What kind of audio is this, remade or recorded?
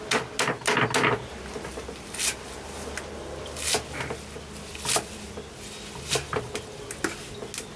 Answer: recorded